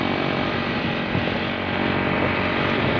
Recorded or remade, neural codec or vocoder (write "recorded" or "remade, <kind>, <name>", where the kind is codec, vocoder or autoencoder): recorded